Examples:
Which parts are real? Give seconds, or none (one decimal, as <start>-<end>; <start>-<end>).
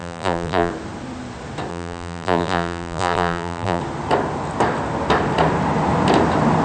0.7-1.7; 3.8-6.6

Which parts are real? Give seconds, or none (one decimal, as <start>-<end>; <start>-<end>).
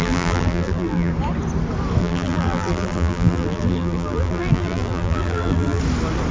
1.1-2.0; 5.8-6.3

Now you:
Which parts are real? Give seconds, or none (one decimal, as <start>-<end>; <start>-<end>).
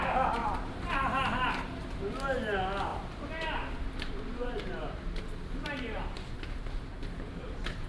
0.0-0.4; 2.1-2.9; 5.5-6.9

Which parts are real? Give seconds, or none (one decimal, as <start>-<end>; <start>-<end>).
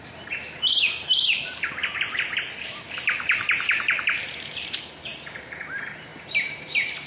0.4-1.0